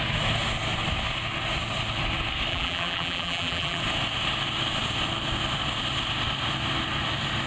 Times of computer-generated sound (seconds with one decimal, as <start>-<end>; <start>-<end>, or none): 2.5-3.8